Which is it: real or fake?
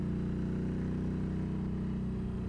real